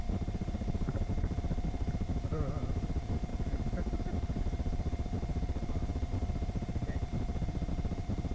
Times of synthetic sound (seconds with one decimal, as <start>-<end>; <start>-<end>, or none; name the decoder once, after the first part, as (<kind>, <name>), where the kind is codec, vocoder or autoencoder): 0.0-8.3 (vocoder, BigVGAN v2)